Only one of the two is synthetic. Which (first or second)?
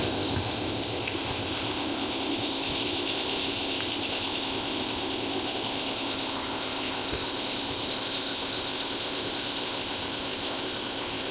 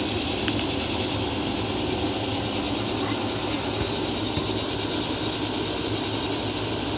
first